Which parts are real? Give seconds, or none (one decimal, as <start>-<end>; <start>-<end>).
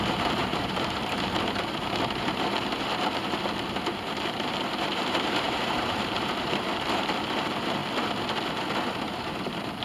3.2-3.8; 7.8-9.0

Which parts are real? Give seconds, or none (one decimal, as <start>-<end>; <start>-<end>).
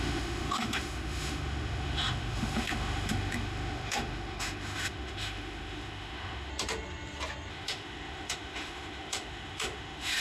6.5-7.5